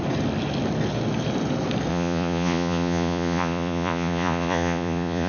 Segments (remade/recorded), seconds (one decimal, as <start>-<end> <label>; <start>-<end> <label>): 0.0-1.9 recorded; 1.9-5.3 remade